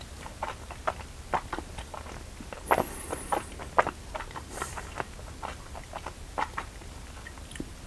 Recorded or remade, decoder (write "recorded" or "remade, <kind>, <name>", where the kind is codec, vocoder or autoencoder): recorded